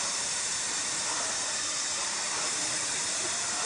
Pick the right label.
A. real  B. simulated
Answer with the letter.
B